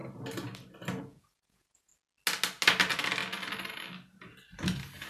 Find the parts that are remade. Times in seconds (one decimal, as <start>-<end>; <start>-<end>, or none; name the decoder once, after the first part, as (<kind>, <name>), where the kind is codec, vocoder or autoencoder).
1.0-1.9 (vocoder, Vocos)